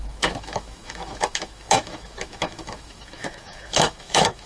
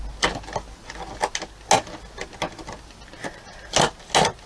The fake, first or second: first